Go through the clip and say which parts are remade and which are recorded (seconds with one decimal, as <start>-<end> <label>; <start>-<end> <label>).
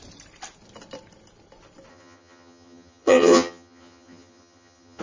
0.0-1.9 recorded; 1.9-5.0 remade